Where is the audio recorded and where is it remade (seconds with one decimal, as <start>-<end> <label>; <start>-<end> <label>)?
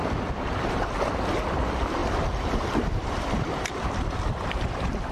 0.0-2.0 recorded; 2.0-5.1 remade